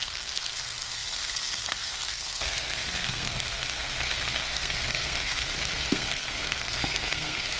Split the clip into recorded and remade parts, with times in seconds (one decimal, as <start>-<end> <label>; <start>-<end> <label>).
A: 0.0-7.6 remade